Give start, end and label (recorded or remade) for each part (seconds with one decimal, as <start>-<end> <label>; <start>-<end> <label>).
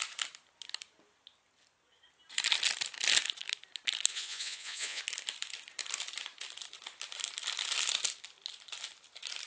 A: 0.0-4.1 recorded; 4.1-5.0 remade; 5.0-9.5 recorded